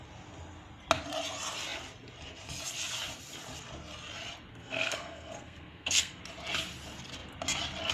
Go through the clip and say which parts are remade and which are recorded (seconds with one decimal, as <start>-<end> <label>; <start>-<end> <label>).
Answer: 0.0-4.5 recorded; 4.5-6.2 remade; 6.2-7.9 recorded